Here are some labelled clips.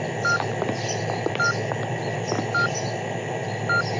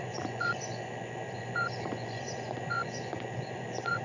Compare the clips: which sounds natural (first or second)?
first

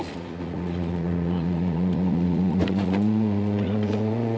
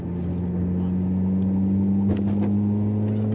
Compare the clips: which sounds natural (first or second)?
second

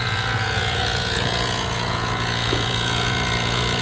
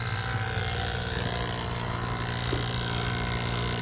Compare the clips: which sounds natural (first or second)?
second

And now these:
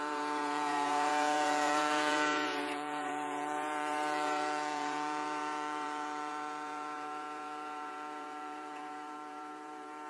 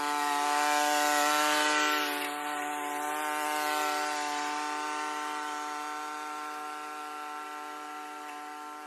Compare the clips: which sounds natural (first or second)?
second